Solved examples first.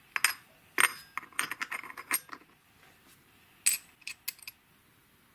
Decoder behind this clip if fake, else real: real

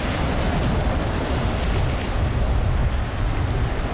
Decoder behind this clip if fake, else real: real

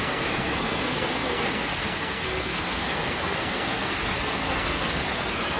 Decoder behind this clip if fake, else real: fake, codec, SNAC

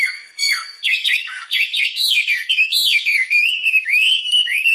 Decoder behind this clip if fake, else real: fake, codec, SNAC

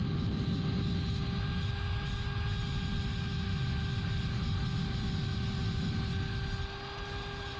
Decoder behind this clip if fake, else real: real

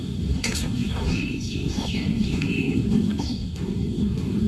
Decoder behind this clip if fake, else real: fake, codec, SNAC